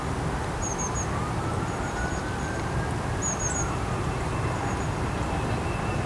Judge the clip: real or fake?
real